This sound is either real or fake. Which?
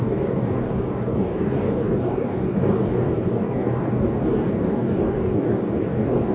fake